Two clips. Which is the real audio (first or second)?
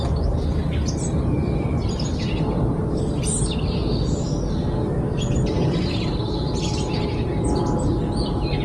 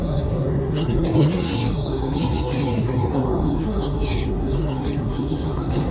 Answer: first